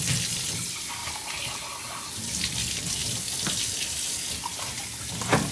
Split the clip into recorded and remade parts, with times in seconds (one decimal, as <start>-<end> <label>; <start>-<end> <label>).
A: 0.0-3.0 recorded; 3.0-4.7 remade; 4.7-5.5 recorded